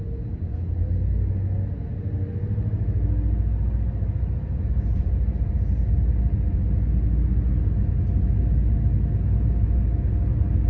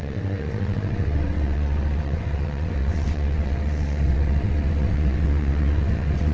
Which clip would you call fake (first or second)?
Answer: second